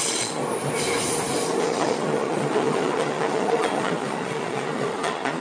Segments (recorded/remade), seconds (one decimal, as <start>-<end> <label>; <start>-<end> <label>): 0.0-0.4 remade; 0.4-1.6 recorded; 1.6-5.4 remade